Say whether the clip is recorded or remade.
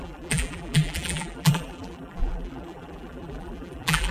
remade